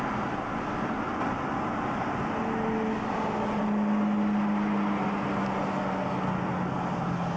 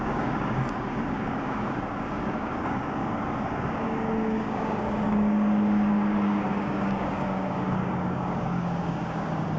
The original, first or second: first